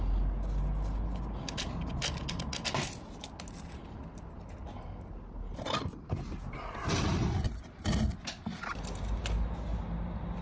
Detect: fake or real real